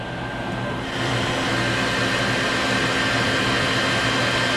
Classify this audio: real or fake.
real